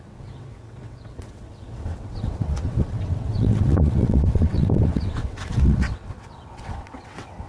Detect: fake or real fake